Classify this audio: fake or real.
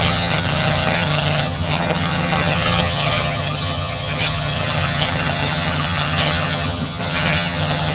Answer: fake